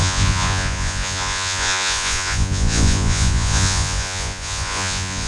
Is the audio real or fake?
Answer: fake